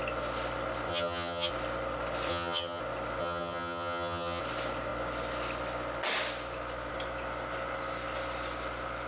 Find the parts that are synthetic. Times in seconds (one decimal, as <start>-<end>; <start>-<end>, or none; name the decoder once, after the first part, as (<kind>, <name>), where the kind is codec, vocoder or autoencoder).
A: 0.9-1.5 (vocoder, HiFi-GAN); 2.3-2.8; 3.2-4.4